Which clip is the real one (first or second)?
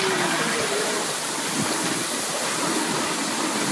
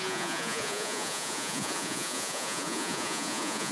first